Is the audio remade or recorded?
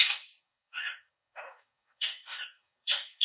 remade